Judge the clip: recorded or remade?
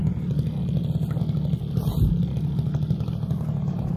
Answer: recorded